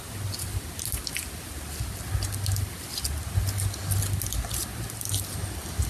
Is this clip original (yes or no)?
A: yes